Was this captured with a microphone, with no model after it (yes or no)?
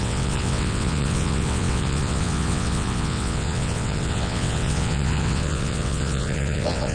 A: no